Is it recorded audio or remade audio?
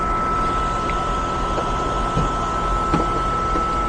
recorded